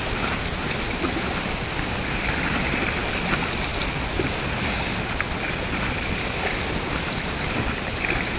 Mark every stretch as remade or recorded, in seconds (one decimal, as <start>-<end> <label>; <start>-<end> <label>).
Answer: 0.0-8.4 recorded